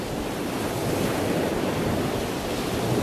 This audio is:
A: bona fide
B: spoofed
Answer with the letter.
A